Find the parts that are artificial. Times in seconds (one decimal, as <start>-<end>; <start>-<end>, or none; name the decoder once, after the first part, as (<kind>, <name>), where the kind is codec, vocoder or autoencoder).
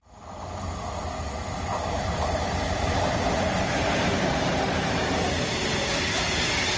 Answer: 1.7-3.1 (vocoder, BigVGAN v2)